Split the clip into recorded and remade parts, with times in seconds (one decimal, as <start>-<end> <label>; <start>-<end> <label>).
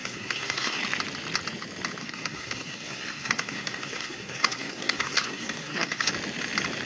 0.0-0.8 remade; 0.8-2.0 recorded; 2.0-6.1 remade; 6.1-6.9 recorded